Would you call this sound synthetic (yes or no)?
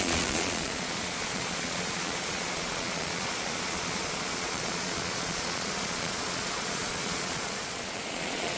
yes